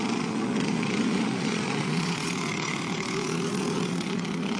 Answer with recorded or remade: remade